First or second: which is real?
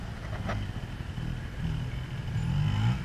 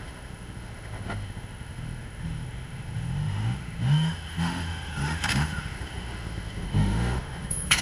first